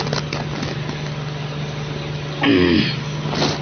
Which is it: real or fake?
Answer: real